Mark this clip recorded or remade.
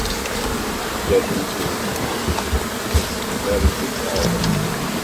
recorded